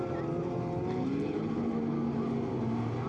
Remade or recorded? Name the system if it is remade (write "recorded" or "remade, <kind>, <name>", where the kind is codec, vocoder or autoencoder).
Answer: recorded